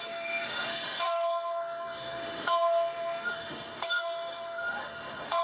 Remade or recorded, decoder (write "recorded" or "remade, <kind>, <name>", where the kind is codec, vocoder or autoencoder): remade, autoencoder, DAC-VAE